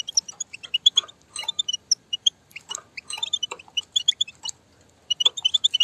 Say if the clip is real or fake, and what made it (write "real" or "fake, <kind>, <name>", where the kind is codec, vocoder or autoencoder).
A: real